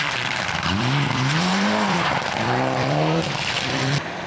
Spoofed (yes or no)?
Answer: yes